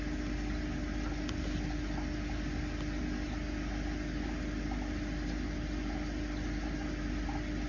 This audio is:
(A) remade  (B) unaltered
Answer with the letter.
B